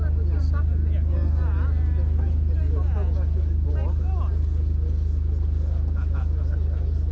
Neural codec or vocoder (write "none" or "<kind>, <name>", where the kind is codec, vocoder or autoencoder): none